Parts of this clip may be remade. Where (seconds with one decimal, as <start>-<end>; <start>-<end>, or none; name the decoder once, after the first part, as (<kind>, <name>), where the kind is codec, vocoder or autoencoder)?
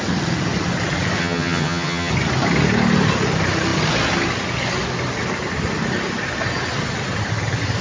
1.2-2.1 (vocoder, HiFi-GAN)